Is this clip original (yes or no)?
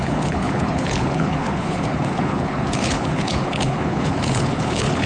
no